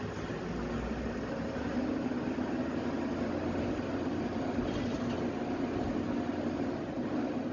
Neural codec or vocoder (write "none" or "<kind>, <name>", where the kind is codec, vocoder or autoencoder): none